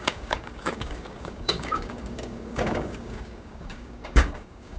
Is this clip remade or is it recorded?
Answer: remade